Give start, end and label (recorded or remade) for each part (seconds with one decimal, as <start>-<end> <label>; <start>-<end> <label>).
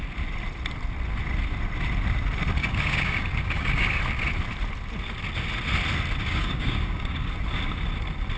0.0-2.6 recorded; 2.6-4.0 remade; 4.0-6.2 recorded; 6.2-7.3 remade; 7.3-8.4 recorded